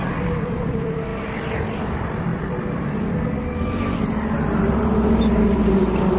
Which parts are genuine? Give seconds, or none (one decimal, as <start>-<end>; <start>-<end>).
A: 0.0-6.2